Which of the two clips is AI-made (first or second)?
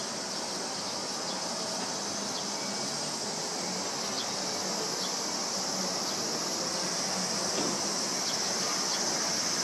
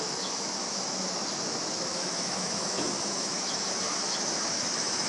second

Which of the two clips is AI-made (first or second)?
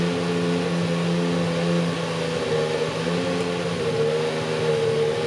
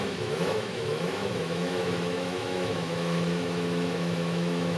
second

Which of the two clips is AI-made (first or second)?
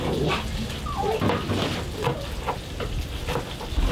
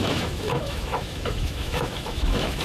second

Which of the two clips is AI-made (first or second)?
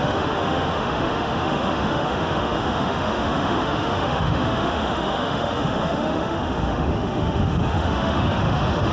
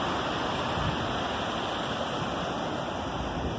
first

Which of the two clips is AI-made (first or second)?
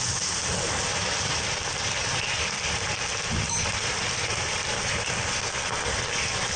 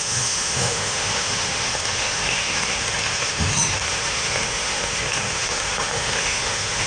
second